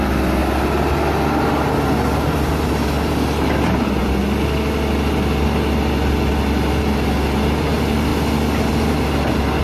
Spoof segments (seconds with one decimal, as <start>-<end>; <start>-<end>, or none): none